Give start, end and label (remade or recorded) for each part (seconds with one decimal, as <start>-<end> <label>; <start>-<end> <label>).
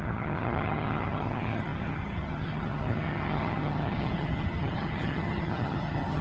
0.0-6.2 remade